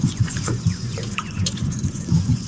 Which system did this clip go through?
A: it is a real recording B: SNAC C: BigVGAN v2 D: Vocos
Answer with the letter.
D